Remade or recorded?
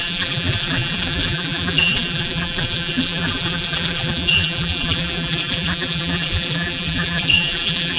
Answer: remade